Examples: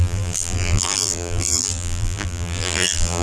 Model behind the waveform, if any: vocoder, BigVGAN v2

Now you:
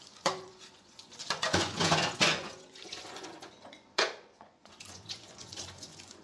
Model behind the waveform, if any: vocoder, Vocos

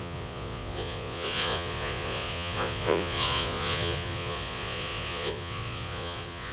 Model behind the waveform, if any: vocoder, Vocos